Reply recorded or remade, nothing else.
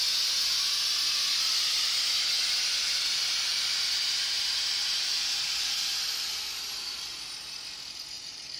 recorded